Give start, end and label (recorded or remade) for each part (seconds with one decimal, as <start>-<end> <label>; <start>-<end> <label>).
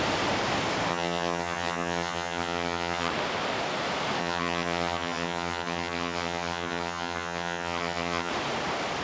0.0-0.9 recorded; 0.9-3.1 remade; 3.1-4.2 recorded; 4.2-8.3 remade; 8.3-9.0 recorded